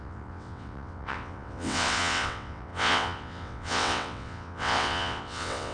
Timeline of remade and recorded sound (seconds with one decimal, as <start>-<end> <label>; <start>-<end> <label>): 0.0-5.7 remade